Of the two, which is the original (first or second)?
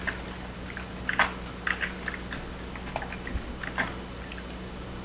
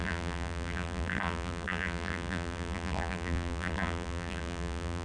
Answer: first